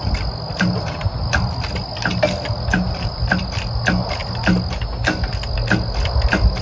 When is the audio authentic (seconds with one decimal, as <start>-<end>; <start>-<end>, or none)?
0.0-2.7; 3.4-6.6